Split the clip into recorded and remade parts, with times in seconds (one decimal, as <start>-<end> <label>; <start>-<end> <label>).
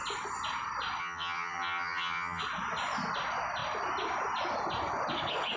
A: 0.0-1.0 recorded; 1.0-2.4 remade; 2.4-5.6 recorded